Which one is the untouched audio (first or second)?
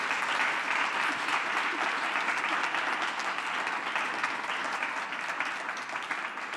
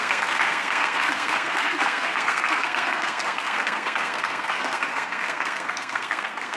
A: first